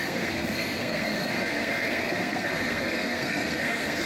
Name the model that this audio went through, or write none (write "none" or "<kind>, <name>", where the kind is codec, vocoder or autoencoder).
codec, SNAC